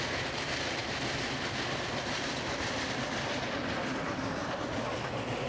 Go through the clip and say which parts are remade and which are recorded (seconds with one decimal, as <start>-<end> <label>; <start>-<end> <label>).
0.0-5.5 recorded